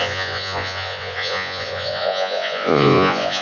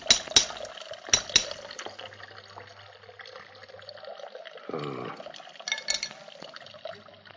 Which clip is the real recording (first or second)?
second